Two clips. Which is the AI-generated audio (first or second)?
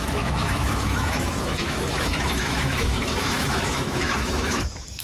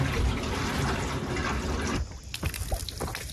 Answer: first